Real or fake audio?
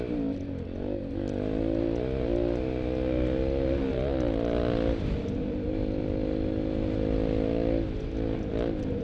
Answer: real